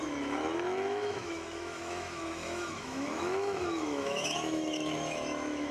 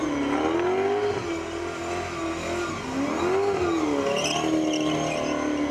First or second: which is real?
second